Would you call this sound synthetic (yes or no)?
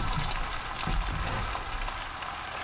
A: no